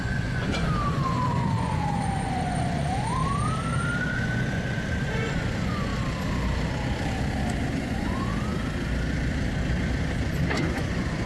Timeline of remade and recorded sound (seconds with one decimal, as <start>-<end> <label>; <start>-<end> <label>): 0.0-3.2 remade; 3.2-4.0 recorded; 4.0-5.9 remade; 5.9-7.7 recorded; 7.7-8.3 remade; 8.3-10.5 recorded; 10.5-11.3 remade